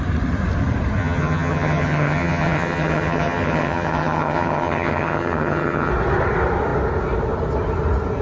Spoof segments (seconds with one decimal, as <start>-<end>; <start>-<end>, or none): 1.0-5.9